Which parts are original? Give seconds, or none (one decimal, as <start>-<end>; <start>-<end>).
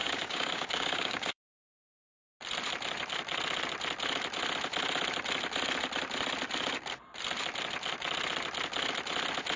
2.4-9.6